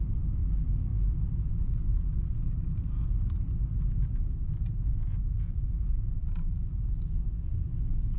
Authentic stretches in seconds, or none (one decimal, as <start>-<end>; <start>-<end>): 0.0-1.9; 6.8-8.2